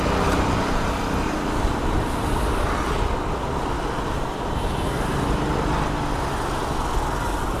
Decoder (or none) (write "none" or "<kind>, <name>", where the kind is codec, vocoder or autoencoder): none